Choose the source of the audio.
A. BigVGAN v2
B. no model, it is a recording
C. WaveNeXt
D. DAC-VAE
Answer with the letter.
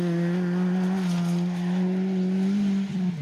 B